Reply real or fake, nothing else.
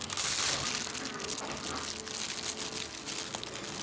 real